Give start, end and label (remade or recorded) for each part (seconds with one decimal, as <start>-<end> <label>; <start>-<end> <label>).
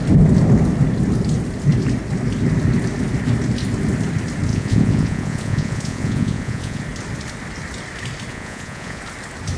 0.0-4.5 recorded; 4.5-6.8 remade; 6.8-8.3 recorded; 8.3-9.0 remade; 9.0-9.6 recorded